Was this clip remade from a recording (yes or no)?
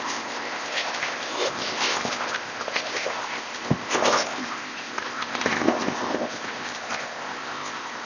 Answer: yes